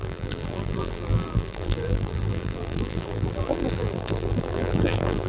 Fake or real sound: fake